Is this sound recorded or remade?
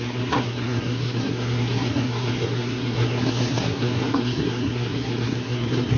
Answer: remade